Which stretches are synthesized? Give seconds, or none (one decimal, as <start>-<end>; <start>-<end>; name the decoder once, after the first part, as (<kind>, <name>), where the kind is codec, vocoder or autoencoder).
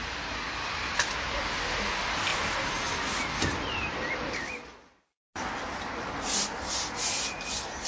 none